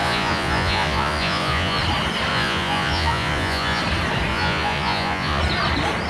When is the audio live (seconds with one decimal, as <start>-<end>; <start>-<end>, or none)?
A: 1.8-2.3; 3.8-4.3; 5.4-6.1

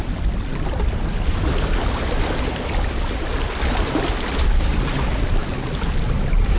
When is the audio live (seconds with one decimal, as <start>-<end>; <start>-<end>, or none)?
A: 0.0-6.6

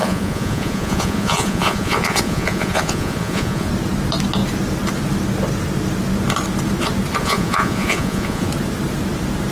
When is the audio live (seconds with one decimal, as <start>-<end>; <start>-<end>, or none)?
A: 3.7-7.2; 8.5-9.5

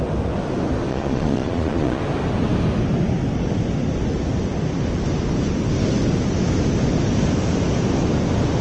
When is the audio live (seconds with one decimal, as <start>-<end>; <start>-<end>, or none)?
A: 0.0-0.9; 2.0-8.6

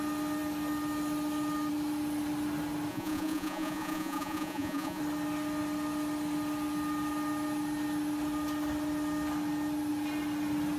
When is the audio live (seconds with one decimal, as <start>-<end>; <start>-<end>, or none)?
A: 0.0-2.9; 5.0-10.8